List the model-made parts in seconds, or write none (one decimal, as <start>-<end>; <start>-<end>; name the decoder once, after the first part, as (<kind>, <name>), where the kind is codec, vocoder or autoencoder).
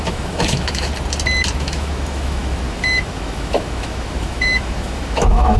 0.0-0.9 (autoencoder, DAC-VAE); 1.6-5.6